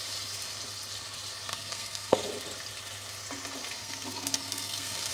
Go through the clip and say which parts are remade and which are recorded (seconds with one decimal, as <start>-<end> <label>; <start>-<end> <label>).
0.0-1.5 recorded; 1.5-2.2 remade; 2.2-3.8 recorded; 3.8-5.1 remade